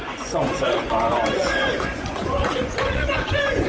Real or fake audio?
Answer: fake